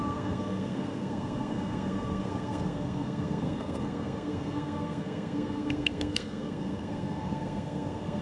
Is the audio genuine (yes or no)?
no